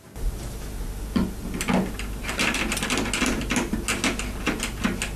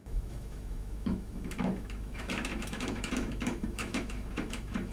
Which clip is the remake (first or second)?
second